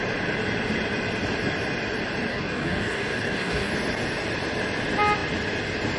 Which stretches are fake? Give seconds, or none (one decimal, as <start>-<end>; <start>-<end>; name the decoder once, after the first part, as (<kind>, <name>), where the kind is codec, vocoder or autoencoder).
2.3-3.7 (codec, DAC)